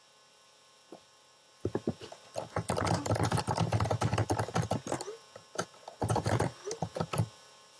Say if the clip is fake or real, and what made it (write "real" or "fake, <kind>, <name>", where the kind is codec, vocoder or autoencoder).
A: real